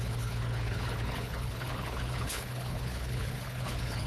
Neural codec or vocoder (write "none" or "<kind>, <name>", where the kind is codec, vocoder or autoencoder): codec, HILCodec